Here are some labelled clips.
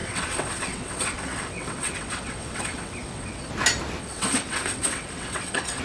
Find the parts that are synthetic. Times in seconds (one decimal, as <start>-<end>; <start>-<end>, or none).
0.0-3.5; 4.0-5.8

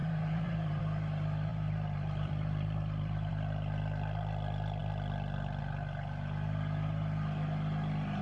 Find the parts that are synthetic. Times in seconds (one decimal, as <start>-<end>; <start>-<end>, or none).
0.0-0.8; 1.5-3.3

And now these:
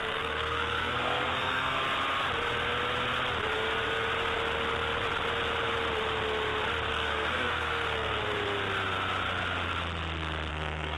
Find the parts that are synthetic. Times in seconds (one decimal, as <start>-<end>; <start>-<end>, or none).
0.0-1.8; 6.9-8.2; 10.5-11.0

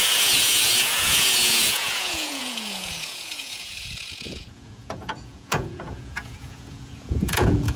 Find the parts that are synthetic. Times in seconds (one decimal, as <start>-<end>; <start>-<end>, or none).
0.0-7.8

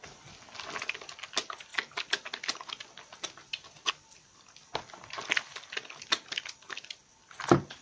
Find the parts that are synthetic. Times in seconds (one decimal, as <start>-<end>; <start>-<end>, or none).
none